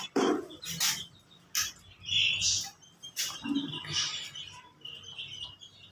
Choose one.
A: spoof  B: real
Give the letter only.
B